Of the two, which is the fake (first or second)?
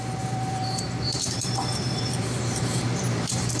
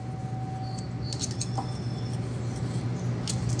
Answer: first